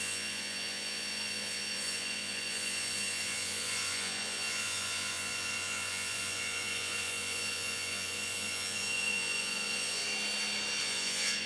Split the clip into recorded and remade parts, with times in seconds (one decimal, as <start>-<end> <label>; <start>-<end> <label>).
0.0-10.0 remade; 10.0-10.8 recorded; 10.8-11.5 remade